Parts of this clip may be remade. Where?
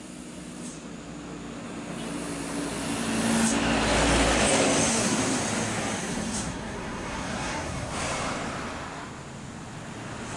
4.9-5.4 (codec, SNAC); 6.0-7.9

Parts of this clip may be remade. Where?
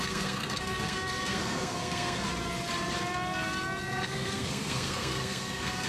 0.0-2.3 (codec, SNAC); 3.8-5.9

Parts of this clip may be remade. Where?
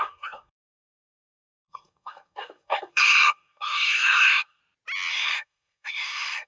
0.0-4.6 (codec, SNAC); 5.1-6.5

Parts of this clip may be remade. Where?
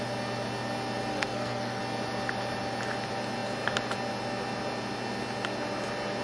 1.1-1.8 (codec, SNAC)